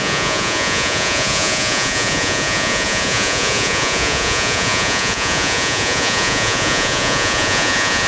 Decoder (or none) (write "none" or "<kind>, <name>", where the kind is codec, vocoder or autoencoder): vocoder, Vocos